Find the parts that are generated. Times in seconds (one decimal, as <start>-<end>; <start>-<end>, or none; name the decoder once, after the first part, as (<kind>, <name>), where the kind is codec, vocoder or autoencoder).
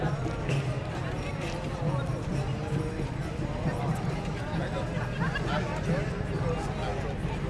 none